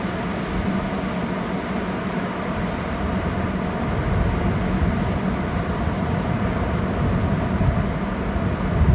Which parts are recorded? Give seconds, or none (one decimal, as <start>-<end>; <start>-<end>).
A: 0.0-8.9